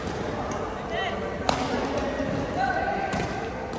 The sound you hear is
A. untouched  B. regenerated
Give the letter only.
A